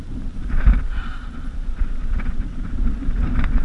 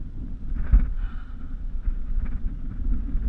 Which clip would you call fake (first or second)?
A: first